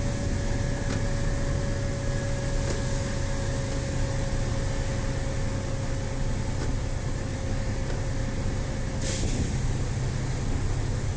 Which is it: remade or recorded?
recorded